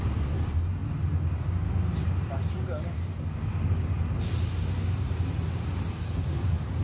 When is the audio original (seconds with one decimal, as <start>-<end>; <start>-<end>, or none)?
0.0-6.8